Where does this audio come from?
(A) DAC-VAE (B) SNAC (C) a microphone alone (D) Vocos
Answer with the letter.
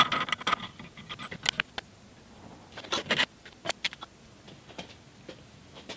C